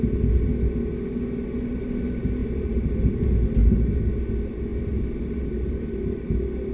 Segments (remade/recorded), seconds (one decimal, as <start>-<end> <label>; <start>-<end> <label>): 0.0-2.4 recorded; 2.4-3.1 remade; 3.1-3.6 recorded; 3.6-4.1 remade; 4.1-6.7 recorded